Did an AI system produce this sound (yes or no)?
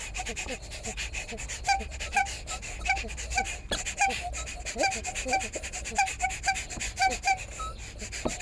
no